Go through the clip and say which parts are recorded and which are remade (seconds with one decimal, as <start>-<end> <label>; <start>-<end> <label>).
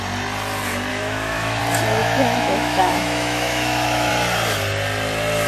0.0-0.9 recorded; 0.9-1.6 remade; 1.6-2.0 recorded; 2.0-4.1 remade; 4.1-5.5 recorded